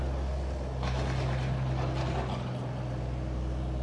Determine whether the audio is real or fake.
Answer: real